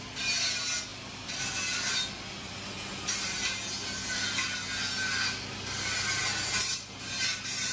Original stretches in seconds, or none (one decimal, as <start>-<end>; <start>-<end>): 0.0-7.7